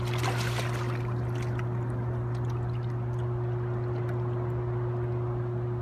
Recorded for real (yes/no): yes